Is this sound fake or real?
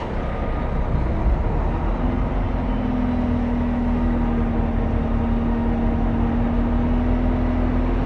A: real